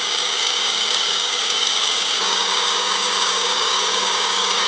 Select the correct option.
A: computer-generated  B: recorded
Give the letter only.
A